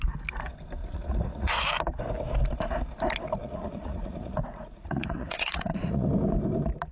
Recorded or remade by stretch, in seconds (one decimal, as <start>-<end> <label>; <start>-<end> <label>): 0.0-0.8 recorded; 0.8-1.6 remade; 1.6-3.4 recorded; 3.4-6.1 remade; 6.1-6.9 recorded